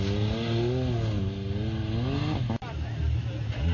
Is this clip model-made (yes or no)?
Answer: no